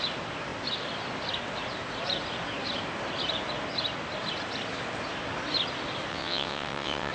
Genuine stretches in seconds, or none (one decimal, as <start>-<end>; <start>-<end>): 0.0-6.1